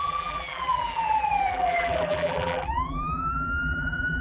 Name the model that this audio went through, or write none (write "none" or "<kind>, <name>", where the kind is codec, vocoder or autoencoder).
vocoder, BigVGAN v2